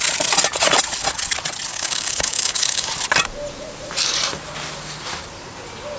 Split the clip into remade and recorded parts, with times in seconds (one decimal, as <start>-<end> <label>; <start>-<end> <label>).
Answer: 0.0-1.7 recorded; 1.7-2.9 remade; 2.9-6.0 recorded

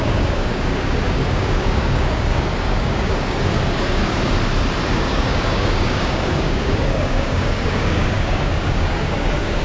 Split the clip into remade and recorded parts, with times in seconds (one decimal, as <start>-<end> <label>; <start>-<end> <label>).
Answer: 0.0-4.0 remade; 4.0-4.9 recorded; 4.9-9.6 remade